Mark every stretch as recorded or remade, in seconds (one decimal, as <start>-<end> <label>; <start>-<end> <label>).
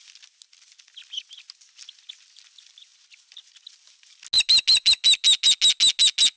0.0-6.4 recorded